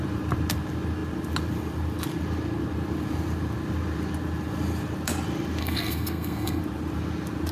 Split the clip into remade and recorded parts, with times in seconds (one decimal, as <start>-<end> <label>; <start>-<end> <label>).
0.0-5.6 recorded; 5.6-6.6 remade; 6.6-7.5 recorded